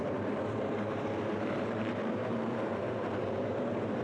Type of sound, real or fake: fake